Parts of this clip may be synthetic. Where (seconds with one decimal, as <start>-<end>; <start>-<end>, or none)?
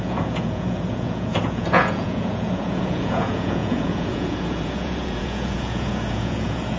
0.0-6.8